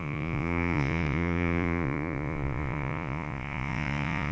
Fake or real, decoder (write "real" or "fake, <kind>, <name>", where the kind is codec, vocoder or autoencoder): fake, vocoder, Vocos